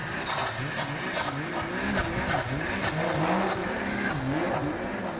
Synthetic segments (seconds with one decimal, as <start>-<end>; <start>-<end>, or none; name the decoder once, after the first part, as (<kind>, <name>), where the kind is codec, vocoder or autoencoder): 3.6-4.1 (vocoder, BigVGAN v2)